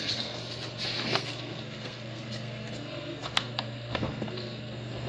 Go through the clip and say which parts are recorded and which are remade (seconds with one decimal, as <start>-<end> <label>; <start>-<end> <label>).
0.0-0.4 remade; 0.4-1.1 recorded; 1.1-5.1 remade